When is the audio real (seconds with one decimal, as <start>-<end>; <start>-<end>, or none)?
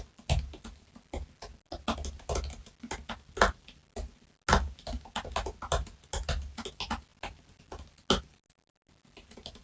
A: 0.0-9.6